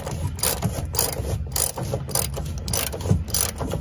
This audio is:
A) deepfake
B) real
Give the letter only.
B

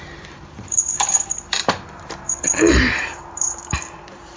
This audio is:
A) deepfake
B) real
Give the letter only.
A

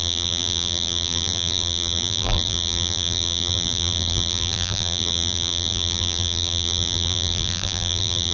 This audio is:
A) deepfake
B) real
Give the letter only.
A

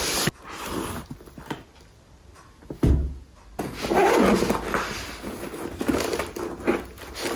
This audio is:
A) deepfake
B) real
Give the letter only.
B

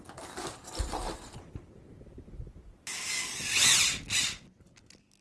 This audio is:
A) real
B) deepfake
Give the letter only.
A